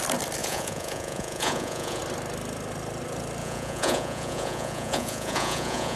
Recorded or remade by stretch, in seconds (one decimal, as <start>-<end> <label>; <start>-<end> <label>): 0.0-0.4 recorded; 0.4-2.0 remade; 2.0-3.4 recorded; 3.4-6.0 remade